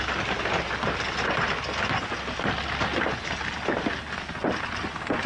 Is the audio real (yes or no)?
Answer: yes